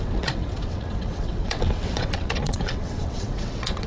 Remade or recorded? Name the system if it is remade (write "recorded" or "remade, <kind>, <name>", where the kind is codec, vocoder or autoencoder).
remade, vocoder, WaveNeXt